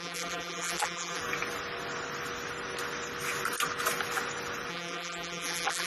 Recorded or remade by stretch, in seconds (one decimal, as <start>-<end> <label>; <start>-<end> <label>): 0.0-1.2 remade; 1.2-4.7 recorded; 4.7-5.9 remade